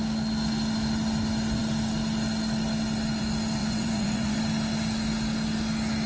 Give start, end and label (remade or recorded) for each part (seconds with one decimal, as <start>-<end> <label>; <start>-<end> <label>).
0.0-3.6 recorded; 3.6-4.4 remade; 4.4-6.1 recorded